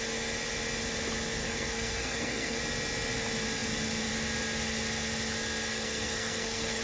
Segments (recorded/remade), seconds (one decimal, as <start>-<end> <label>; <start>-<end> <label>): 0.0-1.4 recorded; 1.4-2.6 remade; 2.6-5.7 recorded; 5.7-6.8 remade